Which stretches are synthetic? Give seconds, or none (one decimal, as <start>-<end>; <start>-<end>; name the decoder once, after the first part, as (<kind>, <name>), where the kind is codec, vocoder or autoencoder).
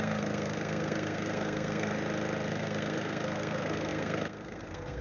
0.0-1.9 (codec, SNAC); 2.5-5.0